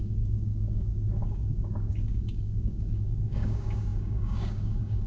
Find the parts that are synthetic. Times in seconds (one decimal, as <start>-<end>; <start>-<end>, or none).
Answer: 0.0-5.1